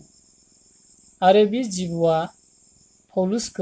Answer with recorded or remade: recorded